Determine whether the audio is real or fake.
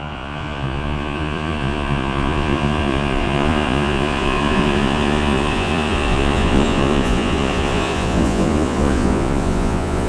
fake